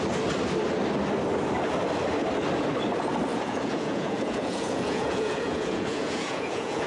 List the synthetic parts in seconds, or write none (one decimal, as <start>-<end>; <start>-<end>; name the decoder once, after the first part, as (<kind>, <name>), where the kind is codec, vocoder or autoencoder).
3.3-6.9 (vocoder, Vocos)